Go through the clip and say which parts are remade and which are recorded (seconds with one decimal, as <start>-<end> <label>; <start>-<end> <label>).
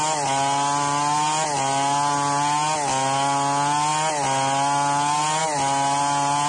0.0-6.5 recorded